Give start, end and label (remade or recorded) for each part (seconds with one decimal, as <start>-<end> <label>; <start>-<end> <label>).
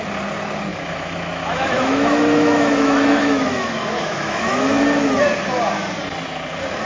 0.0-0.7 recorded; 0.7-4.8 remade; 4.8-6.8 recorded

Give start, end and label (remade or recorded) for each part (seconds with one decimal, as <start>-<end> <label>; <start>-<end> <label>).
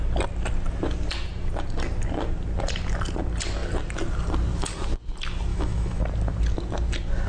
0.0-5.5 recorded; 5.5-6.0 remade; 6.0-7.3 recorded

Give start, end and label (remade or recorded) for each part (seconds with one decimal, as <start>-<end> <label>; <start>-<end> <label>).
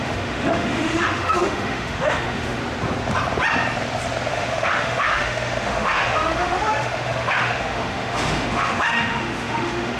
0.0-2.6 remade; 2.6-4.3 recorded; 4.3-10.0 remade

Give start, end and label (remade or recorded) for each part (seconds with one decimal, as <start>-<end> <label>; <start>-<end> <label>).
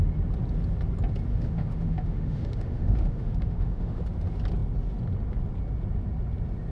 0.0-1.3 recorded; 1.3-4.0 remade; 4.0-6.7 recorded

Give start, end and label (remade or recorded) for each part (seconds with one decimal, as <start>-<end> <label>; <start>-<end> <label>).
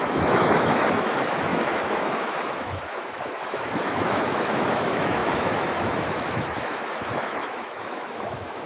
0.0-8.7 remade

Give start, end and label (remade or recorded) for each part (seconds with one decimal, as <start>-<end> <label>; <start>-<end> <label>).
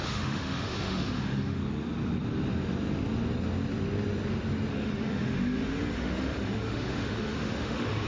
0.0-1.6 remade; 1.6-4.7 recorded; 4.7-8.1 remade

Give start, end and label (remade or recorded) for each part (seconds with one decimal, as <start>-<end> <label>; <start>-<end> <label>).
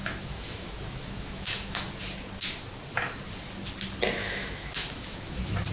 0.0-1.9 remade; 1.9-4.2 recorded; 4.2-5.7 remade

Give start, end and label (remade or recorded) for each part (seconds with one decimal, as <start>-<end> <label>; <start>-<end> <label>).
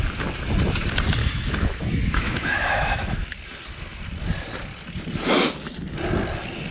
0.0-1.2 recorded; 1.2-3.2 remade; 3.2-6.7 recorded